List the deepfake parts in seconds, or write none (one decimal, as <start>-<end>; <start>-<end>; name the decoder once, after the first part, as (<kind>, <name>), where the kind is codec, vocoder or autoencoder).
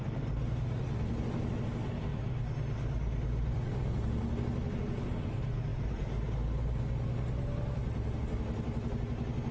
none